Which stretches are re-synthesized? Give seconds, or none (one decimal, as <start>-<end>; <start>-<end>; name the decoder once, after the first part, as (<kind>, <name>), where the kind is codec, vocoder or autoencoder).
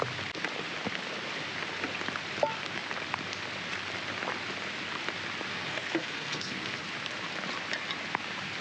5.5-6.8 (codec, SNAC)